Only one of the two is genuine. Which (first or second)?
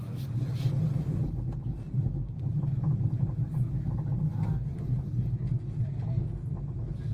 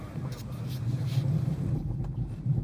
first